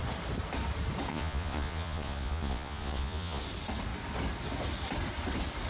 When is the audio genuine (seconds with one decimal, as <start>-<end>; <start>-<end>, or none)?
0.0-1.1; 3.4-5.7